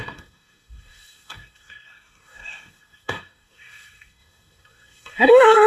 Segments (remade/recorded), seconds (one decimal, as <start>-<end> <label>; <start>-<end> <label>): 0.0-5.7 remade